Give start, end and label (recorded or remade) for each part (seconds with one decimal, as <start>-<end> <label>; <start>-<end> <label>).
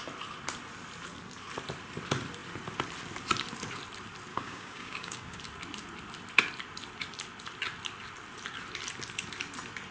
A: 0.0-4.3 recorded; 4.3-5.4 remade; 5.4-9.9 recorded